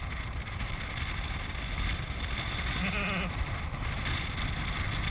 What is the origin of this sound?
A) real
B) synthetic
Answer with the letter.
A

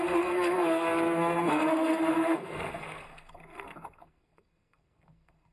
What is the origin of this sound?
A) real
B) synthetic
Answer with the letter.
B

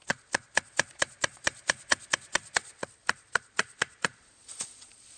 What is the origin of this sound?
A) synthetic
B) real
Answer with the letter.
A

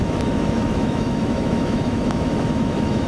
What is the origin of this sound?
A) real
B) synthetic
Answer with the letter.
B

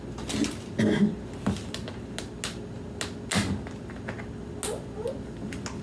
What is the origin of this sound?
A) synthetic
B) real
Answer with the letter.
B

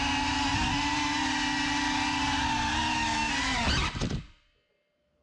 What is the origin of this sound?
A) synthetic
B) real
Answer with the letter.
B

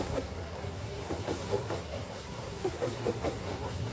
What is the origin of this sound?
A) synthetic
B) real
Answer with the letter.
A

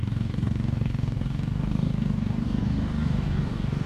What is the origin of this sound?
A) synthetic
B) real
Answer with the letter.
A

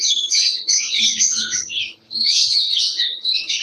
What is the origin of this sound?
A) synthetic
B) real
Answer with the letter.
A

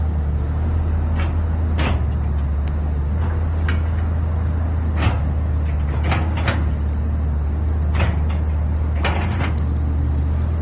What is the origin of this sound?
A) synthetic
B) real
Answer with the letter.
B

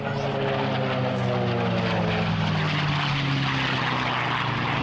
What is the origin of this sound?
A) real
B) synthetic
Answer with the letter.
A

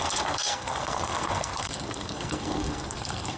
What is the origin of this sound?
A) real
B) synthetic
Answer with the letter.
B